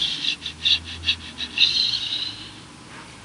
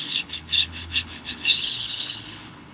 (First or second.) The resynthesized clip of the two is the second